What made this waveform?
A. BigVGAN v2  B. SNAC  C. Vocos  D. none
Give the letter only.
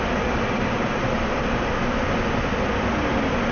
A